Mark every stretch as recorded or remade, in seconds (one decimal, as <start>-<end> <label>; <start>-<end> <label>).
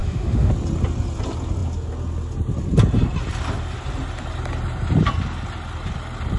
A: 0.0-0.5 remade; 0.5-6.4 recorded